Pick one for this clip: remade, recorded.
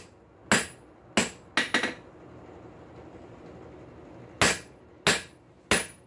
recorded